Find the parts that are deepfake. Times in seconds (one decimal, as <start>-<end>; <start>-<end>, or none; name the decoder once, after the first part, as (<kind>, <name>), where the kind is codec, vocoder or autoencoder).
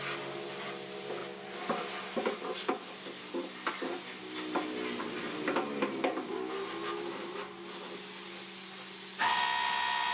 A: none